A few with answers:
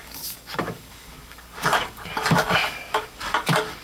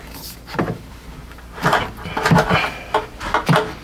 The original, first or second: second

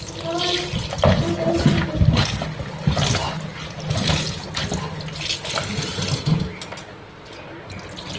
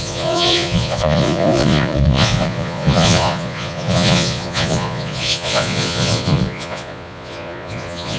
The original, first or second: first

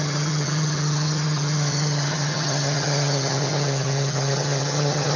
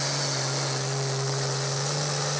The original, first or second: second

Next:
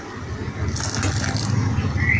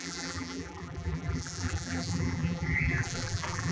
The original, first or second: first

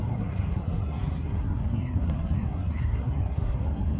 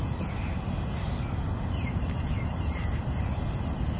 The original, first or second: second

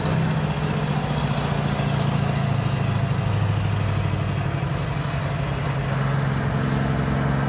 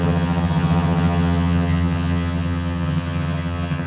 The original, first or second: first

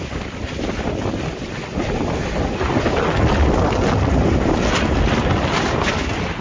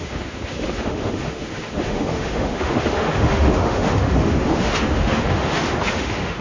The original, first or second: first